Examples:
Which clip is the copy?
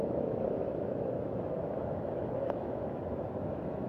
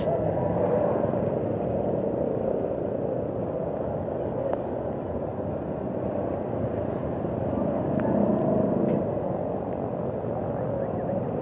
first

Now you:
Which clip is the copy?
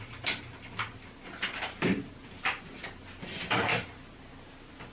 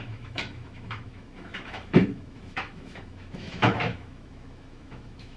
second